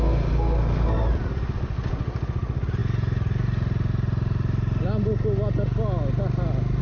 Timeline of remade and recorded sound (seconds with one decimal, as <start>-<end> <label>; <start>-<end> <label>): 0.0-6.8 recorded

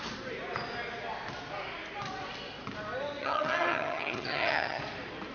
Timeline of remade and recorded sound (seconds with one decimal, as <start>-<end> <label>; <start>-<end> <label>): 0.0-3.2 recorded; 3.2-4.8 remade; 4.8-5.3 recorded